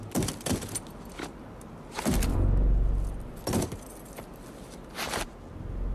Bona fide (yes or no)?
yes